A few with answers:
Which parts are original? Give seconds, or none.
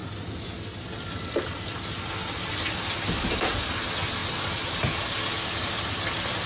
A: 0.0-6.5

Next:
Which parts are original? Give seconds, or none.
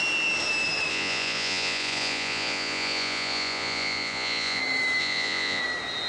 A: 0.0-0.9; 4.6-5.0; 5.6-6.1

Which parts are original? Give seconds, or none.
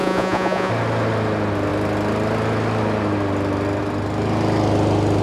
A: 0.7-5.2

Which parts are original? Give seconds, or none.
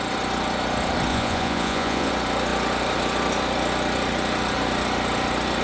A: 0.0-1.1; 2.1-5.6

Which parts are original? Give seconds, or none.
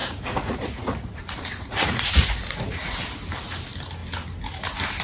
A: 3.0-5.0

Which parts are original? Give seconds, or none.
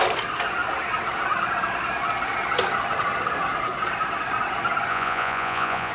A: 0.0-4.9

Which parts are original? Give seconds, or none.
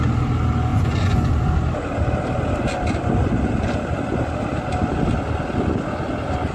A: 0.0-0.7; 1.3-6.5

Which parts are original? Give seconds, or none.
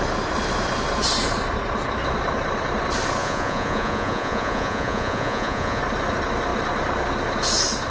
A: 0.0-3.2; 5.8-7.9